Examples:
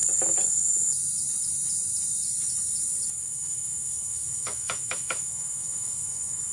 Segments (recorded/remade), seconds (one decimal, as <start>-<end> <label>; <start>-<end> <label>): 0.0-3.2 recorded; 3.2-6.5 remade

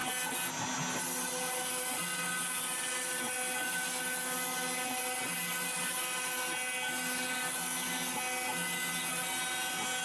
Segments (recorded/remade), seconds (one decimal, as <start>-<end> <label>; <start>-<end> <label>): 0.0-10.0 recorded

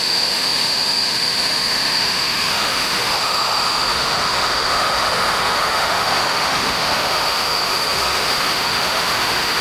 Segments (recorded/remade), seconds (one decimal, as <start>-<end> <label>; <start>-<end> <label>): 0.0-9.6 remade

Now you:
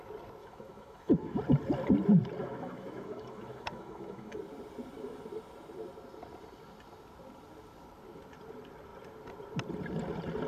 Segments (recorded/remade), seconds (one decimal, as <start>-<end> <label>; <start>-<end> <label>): 0.0-0.4 recorded; 0.4-1.4 remade; 1.4-2.4 recorded; 2.4-4.4 remade; 4.4-10.5 recorded

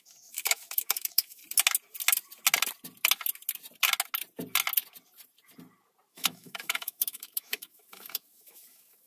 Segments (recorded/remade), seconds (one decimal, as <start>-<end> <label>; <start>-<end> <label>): 0.0-1.4 remade; 1.4-6.1 recorded; 6.1-9.1 remade